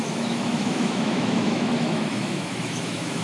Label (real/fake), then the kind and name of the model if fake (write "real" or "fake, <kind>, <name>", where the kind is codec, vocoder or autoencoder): fake, autoencoder, DAC-VAE